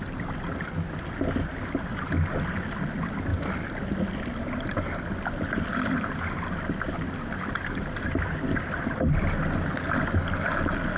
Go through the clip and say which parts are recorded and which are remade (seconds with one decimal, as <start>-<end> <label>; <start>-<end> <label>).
0.0-11.0 recorded